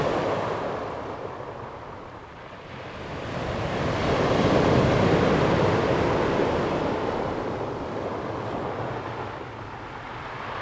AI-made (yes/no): no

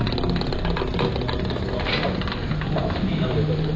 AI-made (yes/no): no